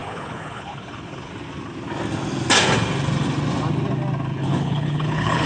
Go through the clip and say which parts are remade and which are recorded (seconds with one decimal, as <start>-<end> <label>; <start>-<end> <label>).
0.0-1.3 remade; 1.3-4.3 recorded; 4.3-5.5 remade